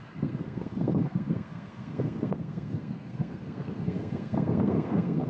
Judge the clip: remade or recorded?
remade